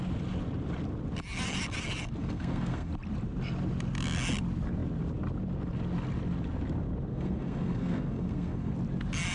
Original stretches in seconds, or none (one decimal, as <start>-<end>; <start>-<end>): 0.0-2.2; 2.9-7.1; 8.7-9.3